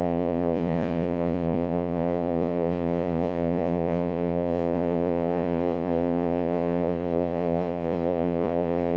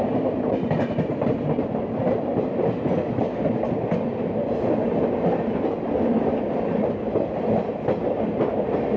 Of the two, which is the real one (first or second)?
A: second